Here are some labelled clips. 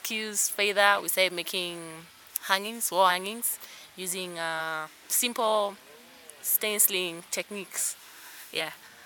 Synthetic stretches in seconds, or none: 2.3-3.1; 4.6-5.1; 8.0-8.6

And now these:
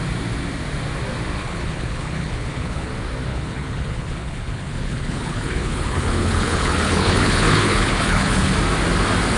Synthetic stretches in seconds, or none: 1.4-2.9; 3.3-8.5

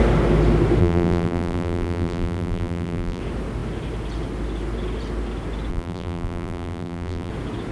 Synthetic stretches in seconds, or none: 0.8-3.2; 5.7-7.3